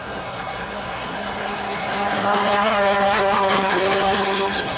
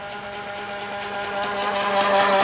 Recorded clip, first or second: second